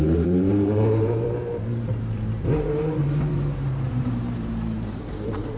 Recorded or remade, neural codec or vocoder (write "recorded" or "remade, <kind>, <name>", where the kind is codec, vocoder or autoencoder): remade, vocoder, BigVGAN v2